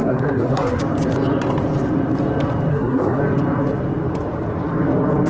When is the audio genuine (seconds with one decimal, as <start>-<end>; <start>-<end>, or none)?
0.8-2.7; 3.2-5.3

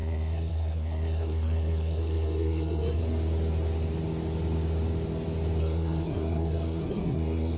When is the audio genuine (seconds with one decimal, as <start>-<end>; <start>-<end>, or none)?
3.0-5.6